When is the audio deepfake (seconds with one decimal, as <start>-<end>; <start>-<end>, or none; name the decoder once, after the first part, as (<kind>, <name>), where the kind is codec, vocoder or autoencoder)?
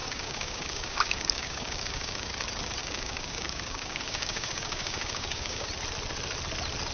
0.0-2.3 (codec, DAC); 2.8-5.7